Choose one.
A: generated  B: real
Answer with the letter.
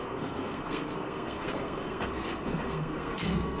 A